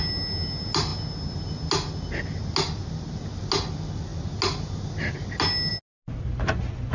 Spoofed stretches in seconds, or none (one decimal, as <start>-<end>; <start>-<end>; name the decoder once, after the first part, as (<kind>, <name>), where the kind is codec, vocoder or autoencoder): none